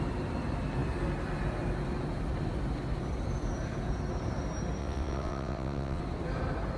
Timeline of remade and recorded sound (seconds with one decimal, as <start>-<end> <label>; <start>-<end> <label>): 0.0-4.8 recorded; 4.8-6.0 remade; 6.0-6.8 recorded